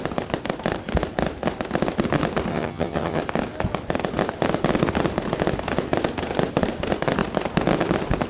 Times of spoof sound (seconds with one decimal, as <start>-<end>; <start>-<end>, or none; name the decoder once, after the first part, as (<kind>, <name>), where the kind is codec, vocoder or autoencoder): 2.5-3.2 (vocoder, HiFi-GAN)

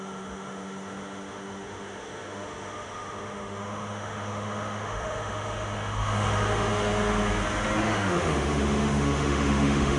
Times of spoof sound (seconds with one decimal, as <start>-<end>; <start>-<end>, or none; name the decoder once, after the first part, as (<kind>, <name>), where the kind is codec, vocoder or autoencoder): 0.0-6.7 (autoencoder, DAC-VAE); 7.8-10.0